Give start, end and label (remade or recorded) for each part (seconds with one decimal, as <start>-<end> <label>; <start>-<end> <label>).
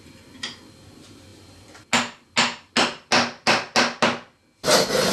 0.0-5.1 recorded